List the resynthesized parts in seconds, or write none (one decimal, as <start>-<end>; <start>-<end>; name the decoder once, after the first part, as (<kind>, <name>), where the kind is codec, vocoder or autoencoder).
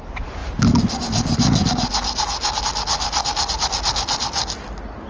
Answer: none